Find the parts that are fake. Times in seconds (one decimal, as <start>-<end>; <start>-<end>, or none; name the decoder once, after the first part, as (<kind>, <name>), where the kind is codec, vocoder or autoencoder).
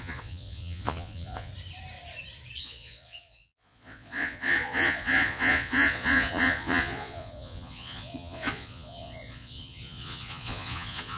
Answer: 0.0-1.5 (vocoder, Vocos); 2.6-11.2